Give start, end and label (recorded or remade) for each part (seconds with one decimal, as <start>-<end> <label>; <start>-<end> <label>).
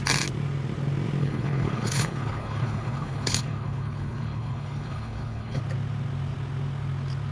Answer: 0.0-1.2 recorded; 1.2-5.6 remade; 5.6-7.3 recorded